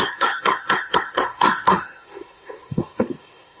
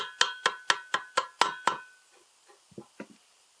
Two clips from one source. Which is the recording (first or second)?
second